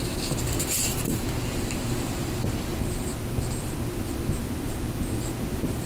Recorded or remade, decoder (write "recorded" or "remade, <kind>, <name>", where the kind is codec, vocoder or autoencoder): recorded